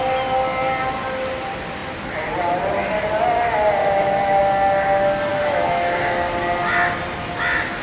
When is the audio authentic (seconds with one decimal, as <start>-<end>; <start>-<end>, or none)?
0.0-3.8; 4.4-5.3; 6.0-7.8